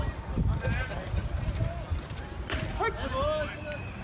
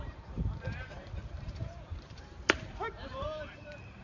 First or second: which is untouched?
first